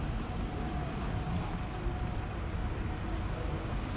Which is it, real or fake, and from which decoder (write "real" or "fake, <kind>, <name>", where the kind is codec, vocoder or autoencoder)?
real